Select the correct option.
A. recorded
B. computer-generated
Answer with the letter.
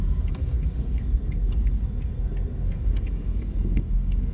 B